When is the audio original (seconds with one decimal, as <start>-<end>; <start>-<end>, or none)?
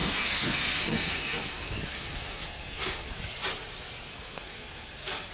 3.2-4.1